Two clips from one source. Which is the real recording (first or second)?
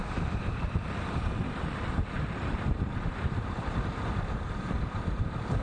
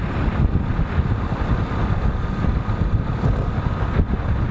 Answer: second